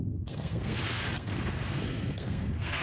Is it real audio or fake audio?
fake